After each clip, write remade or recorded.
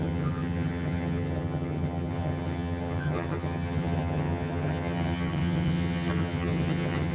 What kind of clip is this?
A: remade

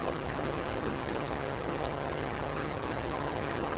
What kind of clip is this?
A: remade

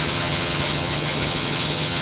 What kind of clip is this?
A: remade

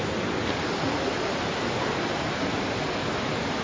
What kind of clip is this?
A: recorded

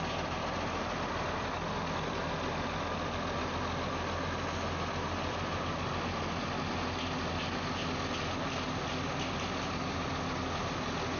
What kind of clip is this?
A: recorded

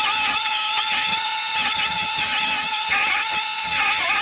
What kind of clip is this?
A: remade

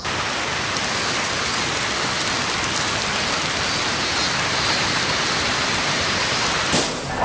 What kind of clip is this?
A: recorded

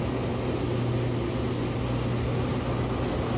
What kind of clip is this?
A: recorded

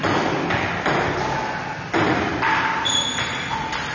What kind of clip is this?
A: recorded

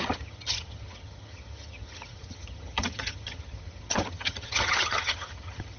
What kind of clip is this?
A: remade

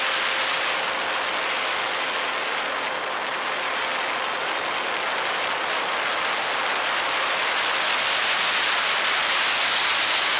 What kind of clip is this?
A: recorded